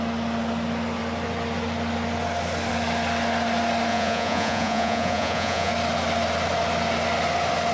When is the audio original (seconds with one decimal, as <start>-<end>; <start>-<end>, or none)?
0.0-3.9; 5.7-7.7